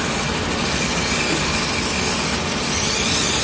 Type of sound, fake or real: real